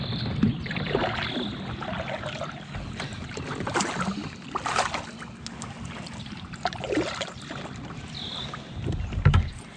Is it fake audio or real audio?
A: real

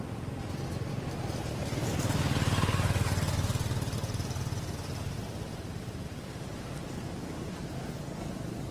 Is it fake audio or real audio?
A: real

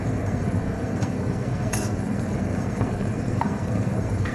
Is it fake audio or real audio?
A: fake